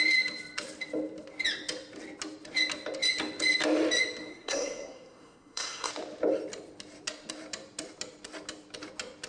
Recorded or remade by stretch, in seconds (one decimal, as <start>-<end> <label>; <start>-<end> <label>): 0.0-4.3 recorded; 4.3-5.9 remade; 5.9-9.3 recorded